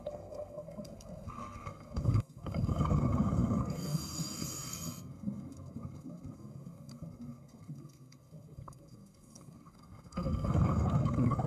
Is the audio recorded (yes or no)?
no